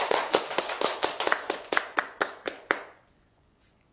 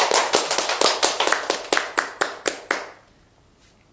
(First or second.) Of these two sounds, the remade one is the first